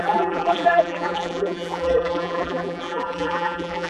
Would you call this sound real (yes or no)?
no